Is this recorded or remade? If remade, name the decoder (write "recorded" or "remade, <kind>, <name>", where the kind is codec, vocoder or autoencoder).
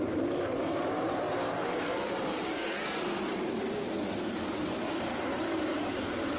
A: remade, vocoder, BigVGAN v2